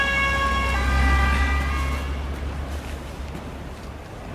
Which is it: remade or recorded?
recorded